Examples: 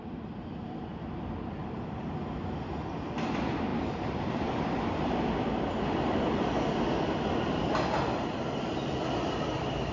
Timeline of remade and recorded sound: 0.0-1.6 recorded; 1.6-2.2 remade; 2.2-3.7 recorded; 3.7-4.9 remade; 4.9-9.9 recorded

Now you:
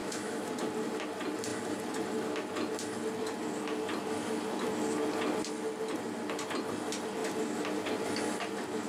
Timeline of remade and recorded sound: 0.0-0.5 remade; 0.5-8.9 recorded

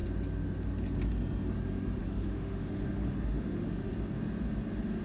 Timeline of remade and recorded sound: 0.0-2.0 recorded; 2.0-3.9 remade; 3.9-5.0 recorded